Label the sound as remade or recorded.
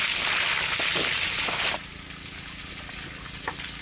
recorded